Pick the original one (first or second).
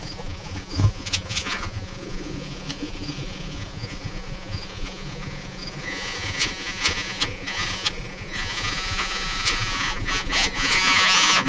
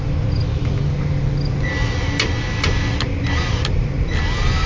second